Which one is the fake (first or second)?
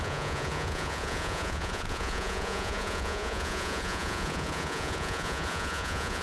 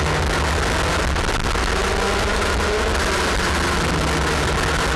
first